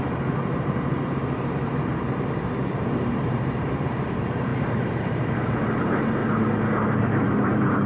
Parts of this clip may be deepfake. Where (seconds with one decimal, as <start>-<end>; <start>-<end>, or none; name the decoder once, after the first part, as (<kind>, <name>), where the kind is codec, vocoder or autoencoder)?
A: 0.0-6.2 (vocoder, BigVGAN v2); 6.9-7.9